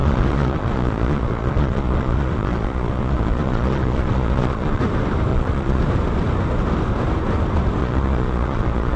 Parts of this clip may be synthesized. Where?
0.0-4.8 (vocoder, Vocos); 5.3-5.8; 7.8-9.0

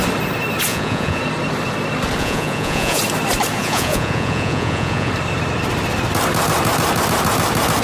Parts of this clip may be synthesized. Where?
0.7-1.2 (vocoder, Vocos); 2.2-3.0; 3.6-5.1

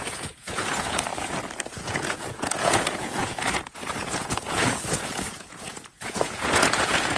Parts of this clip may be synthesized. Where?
0.0-1.1 (vocoder, Vocos); 1.7-7.2

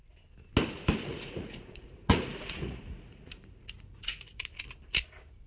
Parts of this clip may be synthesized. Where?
1.1-4.4 (vocoder, Vocos)

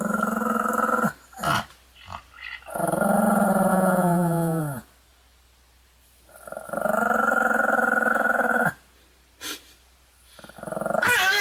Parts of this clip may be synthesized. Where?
3.7-4.6 (vocoder, Vocos)

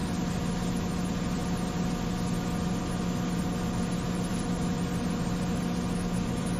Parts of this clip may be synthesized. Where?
none

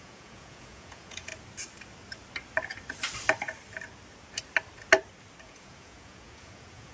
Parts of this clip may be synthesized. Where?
0.0-1.3 (vocoder, Vocos); 5.4-6.9

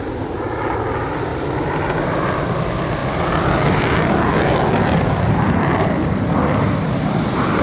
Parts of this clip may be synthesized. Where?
none